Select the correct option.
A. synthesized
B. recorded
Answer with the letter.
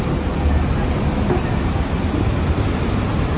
B